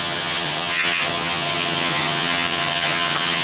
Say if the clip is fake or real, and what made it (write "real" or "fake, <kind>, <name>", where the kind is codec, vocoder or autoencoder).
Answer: fake, vocoder, HiFi-GAN